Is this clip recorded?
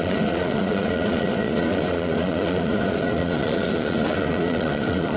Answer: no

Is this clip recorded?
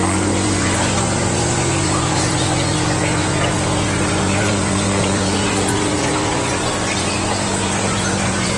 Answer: no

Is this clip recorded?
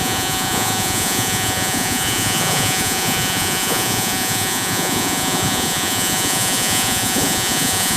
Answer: no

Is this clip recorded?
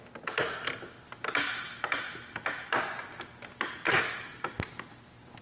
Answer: yes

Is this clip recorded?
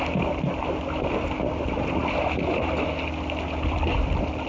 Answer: yes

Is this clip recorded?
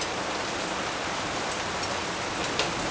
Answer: yes